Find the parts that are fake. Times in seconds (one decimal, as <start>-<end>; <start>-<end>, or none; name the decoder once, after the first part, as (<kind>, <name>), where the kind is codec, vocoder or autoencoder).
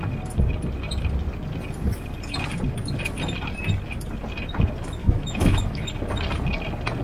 5.0-5.9 (autoencoder, DAC-VAE)